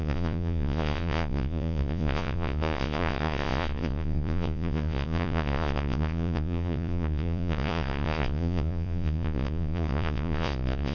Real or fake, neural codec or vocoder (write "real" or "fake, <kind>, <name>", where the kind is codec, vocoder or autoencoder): fake, vocoder, Vocos